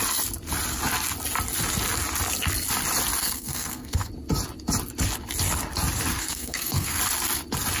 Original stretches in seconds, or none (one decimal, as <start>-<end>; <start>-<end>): 0.0-3.2; 4.1-6.1; 7.0-7.8